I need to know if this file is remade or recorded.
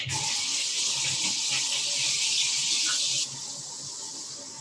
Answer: recorded